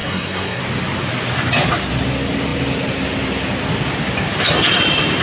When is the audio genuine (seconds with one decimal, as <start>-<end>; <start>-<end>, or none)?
0.6-5.2